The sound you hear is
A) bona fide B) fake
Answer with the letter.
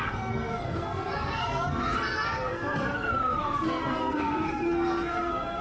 B